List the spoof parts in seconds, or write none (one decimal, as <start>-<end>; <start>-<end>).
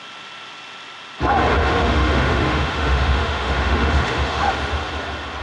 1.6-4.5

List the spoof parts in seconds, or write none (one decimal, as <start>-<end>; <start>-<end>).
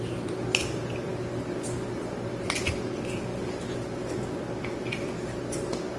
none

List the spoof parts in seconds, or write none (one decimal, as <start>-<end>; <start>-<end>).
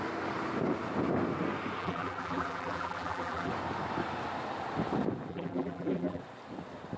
1.8-3.5; 5.3-6.2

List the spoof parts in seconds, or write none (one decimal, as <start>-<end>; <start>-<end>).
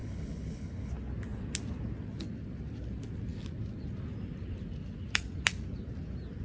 0.0-0.9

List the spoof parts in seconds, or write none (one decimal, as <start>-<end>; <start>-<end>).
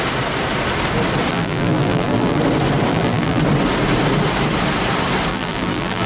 1.3-2.4; 2.9-3.4; 5.3-6.1